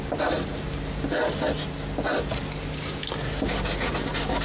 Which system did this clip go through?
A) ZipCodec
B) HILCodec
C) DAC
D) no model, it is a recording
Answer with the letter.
D